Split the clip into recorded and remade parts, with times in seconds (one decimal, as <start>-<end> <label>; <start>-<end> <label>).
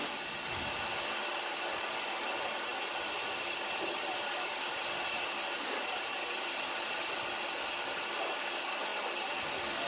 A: 0.0-9.9 recorded